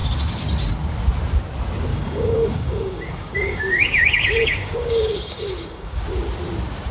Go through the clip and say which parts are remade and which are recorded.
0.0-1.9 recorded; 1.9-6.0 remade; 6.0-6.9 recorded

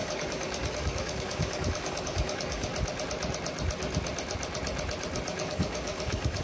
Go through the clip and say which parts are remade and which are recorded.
0.0-2.7 remade; 2.7-5.4 recorded; 5.4-6.4 remade

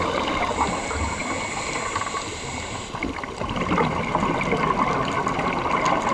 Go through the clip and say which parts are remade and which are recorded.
0.0-6.1 recorded

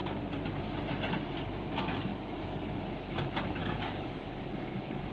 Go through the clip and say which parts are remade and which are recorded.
0.0-2.1 recorded; 2.1-2.7 remade; 2.7-3.6 recorded; 3.6-5.1 remade

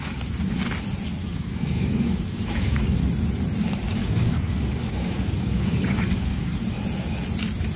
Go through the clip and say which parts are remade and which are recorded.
0.0-1.2 recorded; 1.2-3.0 remade; 3.0-4.0 recorded; 4.0-6.6 remade; 6.6-7.8 recorded